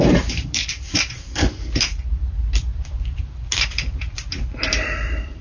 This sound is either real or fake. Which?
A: fake